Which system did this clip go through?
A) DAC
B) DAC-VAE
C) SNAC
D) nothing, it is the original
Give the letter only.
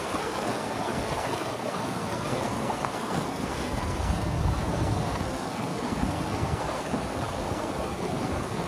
C